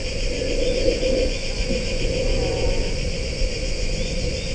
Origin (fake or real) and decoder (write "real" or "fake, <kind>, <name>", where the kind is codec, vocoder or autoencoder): fake, vocoder, Vocos